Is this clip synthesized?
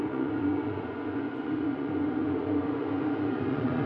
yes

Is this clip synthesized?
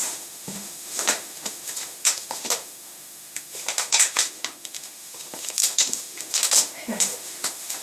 yes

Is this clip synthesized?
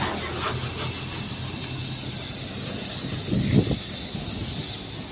no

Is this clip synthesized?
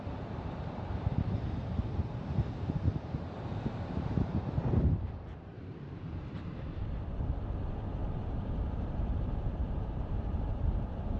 yes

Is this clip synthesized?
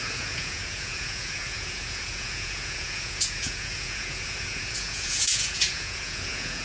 yes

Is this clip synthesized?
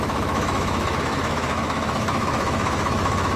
yes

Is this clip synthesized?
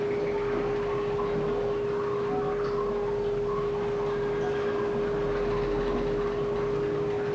no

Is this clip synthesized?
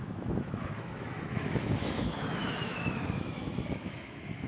yes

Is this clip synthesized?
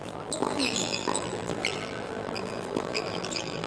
yes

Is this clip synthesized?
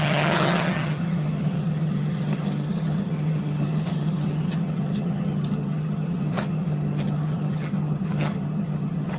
yes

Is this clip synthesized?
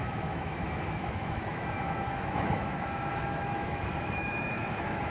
yes